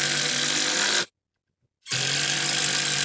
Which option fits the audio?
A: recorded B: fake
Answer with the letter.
A